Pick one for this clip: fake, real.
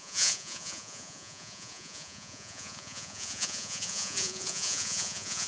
fake